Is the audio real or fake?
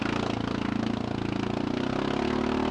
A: real